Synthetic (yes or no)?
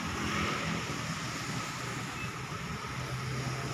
no